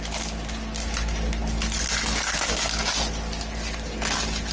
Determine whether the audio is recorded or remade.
recorded